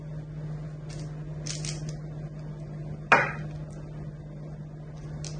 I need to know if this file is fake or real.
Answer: real